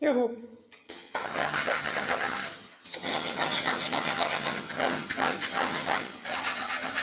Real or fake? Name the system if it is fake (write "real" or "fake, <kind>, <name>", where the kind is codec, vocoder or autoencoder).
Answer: fake, vocoder, HiFi-GAN